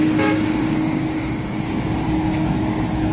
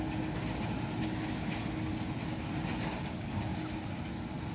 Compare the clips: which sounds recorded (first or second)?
second